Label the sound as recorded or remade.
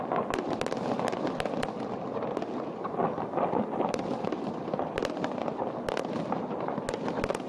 recorded